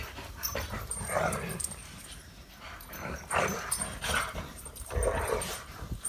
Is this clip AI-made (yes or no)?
yes